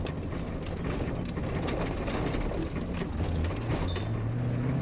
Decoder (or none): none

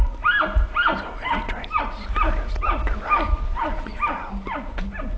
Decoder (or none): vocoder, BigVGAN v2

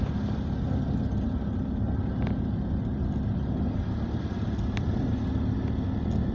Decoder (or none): none